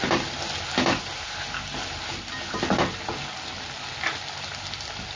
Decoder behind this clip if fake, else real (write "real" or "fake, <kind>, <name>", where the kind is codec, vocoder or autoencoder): real